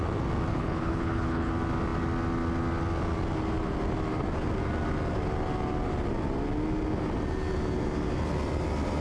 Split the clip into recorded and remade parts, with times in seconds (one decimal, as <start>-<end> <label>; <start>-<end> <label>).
0.0-0.5 recorded; 0.5-1.5 remade; 1.5-9.0 recorded